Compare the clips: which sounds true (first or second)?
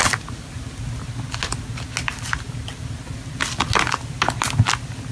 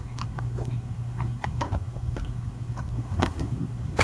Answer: first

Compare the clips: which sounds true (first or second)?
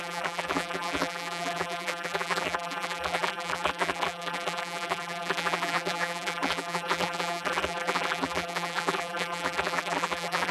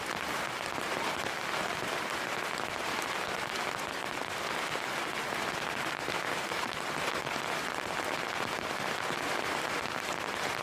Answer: second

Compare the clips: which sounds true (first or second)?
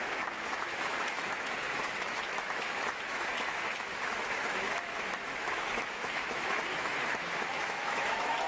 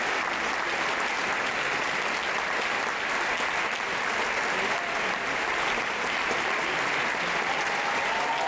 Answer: second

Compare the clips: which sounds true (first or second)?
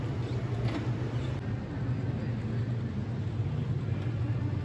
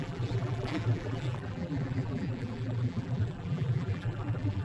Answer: first